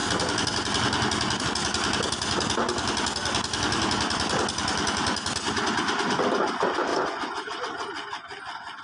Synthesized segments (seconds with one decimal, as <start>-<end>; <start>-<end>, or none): 6.9-7.6